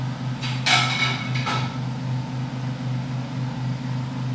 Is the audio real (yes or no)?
yes